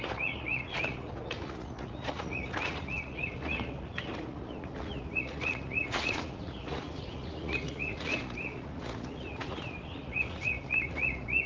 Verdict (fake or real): fake